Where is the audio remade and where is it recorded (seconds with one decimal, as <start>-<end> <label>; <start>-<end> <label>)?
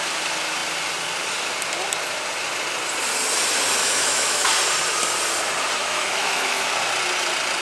0.0-3.8 recorded; 3.8-4.5 remade; 4.5-5.8 recorded; 5.8-6.7 remade; 6.7-7.6 recorded